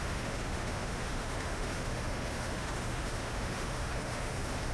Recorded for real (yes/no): no